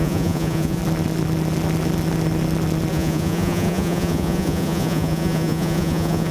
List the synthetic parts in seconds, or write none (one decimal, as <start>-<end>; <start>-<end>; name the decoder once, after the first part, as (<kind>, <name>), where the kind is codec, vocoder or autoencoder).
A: 0.0-0.8 (vocoder, Vocos); 2.9-6.3